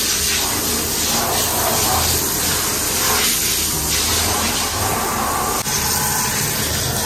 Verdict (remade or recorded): recorded